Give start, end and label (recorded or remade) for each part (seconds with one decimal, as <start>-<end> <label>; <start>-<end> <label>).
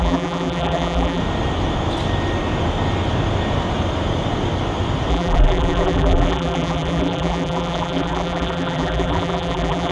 0.0-1.2 remade; 1.2-5.1 recorded; 5.1-9.9 remade